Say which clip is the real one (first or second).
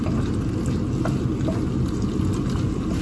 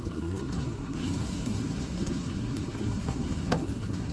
first